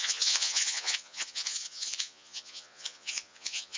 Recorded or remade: remade